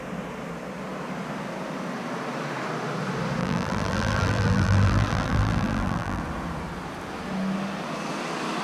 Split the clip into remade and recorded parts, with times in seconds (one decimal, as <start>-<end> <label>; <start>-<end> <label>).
0.0-3.4 recorded; 3.4-6.2 remade; 6.2-8.6 recorded